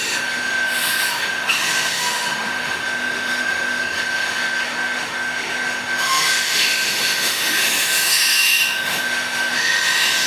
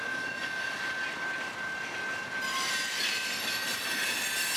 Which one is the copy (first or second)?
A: first